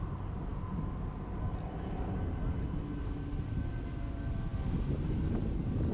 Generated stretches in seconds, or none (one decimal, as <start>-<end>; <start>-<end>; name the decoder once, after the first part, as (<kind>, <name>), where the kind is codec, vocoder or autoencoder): none